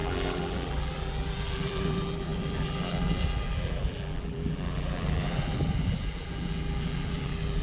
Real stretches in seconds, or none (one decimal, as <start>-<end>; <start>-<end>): none